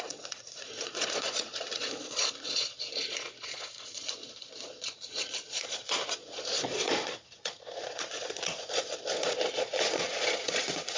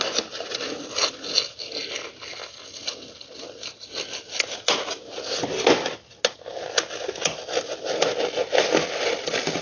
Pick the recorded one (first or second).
second